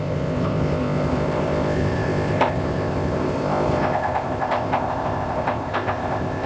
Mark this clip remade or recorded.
remade